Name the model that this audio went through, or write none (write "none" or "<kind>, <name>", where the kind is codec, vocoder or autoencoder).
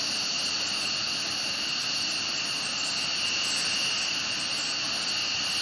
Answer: none